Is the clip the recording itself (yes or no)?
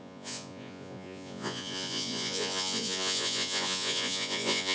no